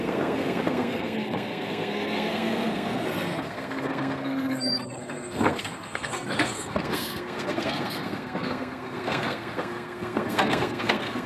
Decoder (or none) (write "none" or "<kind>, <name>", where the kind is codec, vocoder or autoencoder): codec, SNAC